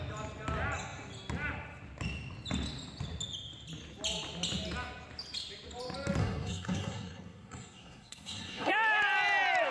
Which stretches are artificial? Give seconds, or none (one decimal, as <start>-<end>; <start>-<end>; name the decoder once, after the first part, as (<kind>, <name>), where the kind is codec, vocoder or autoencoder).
6.2-8.7 (codec, SNAC)